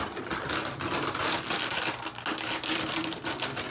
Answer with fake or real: real